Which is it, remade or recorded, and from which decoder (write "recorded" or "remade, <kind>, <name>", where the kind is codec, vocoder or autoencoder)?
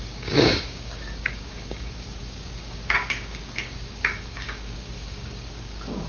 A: remade, codec, DAC